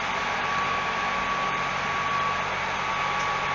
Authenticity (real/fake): real